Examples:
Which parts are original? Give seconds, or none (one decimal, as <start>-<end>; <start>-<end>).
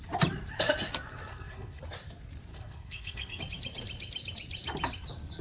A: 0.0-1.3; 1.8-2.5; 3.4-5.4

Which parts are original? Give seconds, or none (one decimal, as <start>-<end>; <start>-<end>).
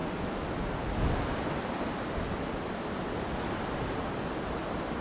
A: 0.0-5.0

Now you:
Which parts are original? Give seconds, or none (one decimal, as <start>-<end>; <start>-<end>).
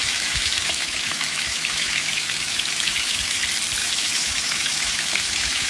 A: 3.4-3.8